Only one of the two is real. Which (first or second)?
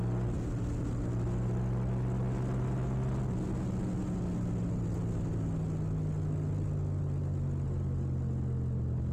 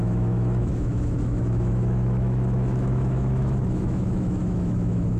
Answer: first